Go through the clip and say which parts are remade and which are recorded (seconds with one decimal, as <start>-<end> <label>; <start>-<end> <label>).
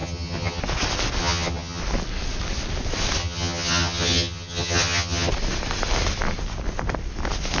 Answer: 0.0-0.6 remade; 0.6-1.2 recorded; 1.2-1.8 remade; 1.8-3.2 recorded; 3.2-5.3 remade; 5.3-7.6 recorded